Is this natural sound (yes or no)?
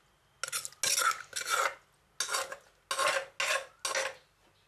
yes